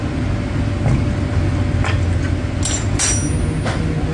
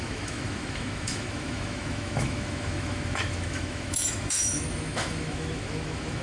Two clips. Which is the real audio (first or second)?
first